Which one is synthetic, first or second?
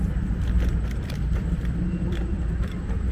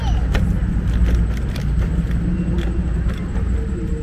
first